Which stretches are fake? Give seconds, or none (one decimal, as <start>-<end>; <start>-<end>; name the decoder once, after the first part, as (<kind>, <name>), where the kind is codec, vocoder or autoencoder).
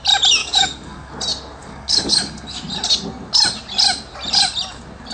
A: 0.4-1.1 (codec, DAC); 1.6-2.6